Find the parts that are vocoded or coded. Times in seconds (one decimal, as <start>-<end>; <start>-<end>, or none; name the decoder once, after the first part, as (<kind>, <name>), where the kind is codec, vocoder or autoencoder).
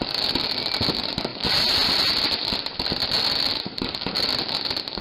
1.3-4.0 (vocoder, BigVGAN v2)